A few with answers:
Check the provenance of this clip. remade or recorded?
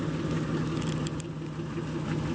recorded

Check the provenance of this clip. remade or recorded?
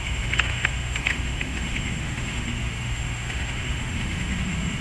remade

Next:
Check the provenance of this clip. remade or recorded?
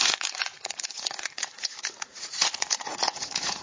remade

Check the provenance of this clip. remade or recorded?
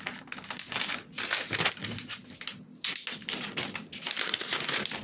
recorded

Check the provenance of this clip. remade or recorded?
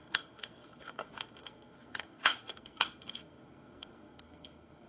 remade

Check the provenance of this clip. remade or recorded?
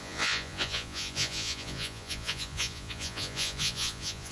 remade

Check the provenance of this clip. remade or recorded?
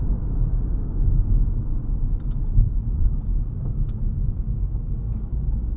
recorded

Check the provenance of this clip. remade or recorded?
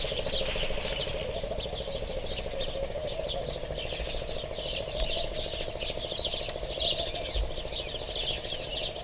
recorded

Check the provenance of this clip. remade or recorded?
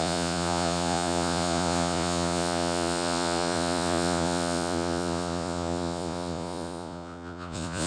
remade